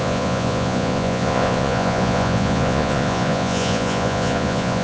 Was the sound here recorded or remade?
remade